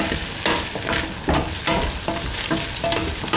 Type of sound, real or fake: real